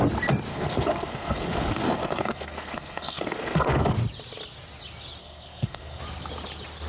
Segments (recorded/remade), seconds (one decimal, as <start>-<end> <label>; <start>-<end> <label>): 0.0-0.5 recorded; 0.5-3.9 remade; 3.9-5.2 recorded; 5.2-6.0 remade; 6.0-6.9 recorded